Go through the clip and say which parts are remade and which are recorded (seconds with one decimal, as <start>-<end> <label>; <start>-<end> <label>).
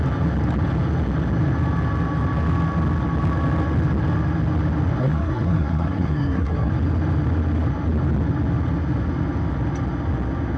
0.0-5.0 recorded; 5.0-6.7 remade; 6.7-10.6 recorded